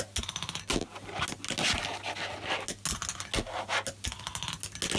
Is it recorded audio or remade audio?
recorded